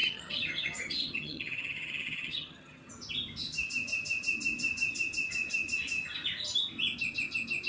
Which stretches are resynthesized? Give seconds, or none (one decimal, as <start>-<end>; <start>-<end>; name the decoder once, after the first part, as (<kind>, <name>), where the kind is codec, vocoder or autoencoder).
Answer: 0.0-2.9 (vocoder, HiFi-GAN)